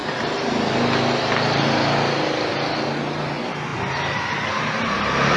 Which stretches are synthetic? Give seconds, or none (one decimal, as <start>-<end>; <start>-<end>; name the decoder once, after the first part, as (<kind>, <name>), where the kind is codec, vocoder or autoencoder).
none